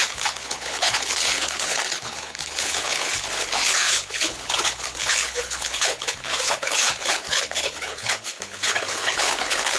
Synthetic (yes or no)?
yes